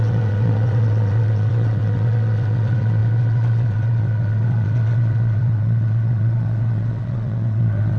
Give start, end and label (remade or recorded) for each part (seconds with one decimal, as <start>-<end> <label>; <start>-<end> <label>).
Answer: 0.0-8.0 remade